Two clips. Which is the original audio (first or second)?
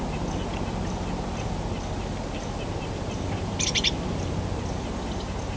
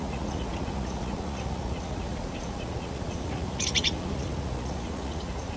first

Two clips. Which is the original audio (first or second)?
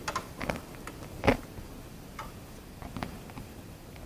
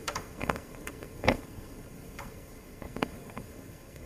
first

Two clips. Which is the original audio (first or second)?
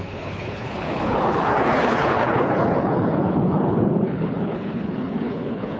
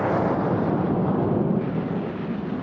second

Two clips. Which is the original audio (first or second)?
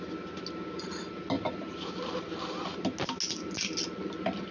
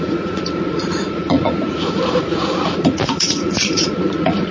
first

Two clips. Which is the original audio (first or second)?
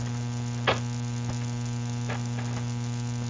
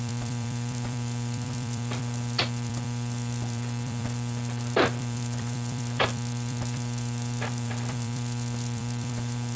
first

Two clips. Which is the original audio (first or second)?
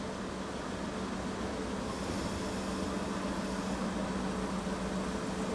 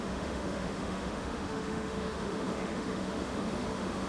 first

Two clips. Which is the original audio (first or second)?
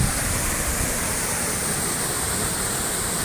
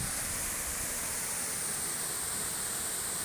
second